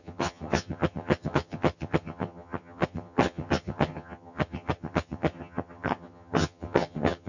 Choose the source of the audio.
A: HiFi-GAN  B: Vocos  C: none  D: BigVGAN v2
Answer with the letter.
A